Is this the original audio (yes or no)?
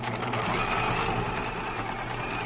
yes